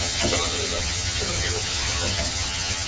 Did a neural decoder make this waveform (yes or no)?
yes